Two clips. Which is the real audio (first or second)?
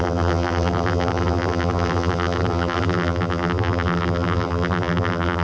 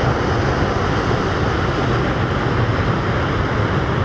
second